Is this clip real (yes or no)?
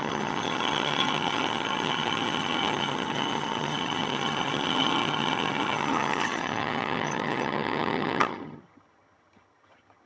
no